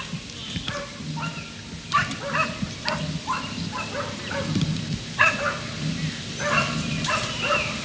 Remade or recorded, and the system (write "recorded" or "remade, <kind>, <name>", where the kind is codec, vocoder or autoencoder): recorded